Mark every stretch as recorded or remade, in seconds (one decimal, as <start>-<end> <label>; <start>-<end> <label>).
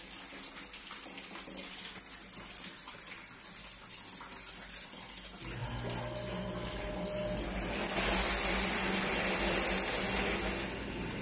0.0-11.2 recorded